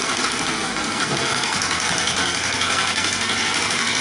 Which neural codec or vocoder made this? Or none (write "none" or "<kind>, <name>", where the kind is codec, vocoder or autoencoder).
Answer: codec, SNAC